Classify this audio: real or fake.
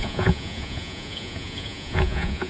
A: fake